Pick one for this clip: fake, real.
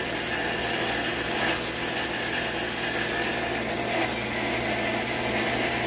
real